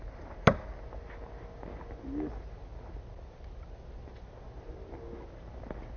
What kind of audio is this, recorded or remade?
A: recorded